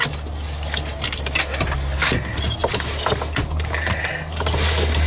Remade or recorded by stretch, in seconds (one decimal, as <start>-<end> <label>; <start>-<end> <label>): 0.0-5.1 recorded